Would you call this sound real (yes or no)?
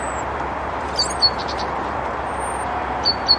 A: no